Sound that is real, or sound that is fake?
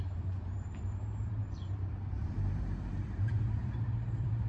fake